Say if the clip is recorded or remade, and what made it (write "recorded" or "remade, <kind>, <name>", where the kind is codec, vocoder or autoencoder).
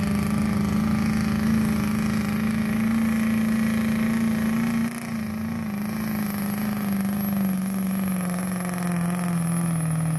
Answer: recorded